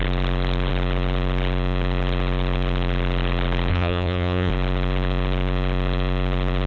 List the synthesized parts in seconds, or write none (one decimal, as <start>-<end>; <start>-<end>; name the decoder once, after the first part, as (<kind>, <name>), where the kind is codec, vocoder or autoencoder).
3.7-4.5 (codec, SNAC)